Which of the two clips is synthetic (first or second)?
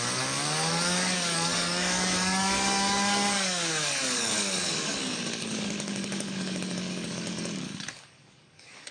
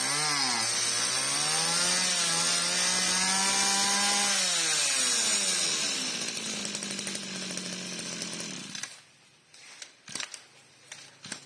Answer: first